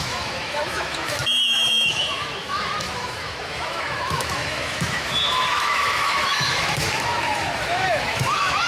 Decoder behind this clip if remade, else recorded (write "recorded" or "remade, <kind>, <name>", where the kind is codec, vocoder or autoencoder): remade, autoencoder, DAC-VAE